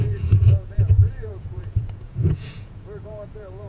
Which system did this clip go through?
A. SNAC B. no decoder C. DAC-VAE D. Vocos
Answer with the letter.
D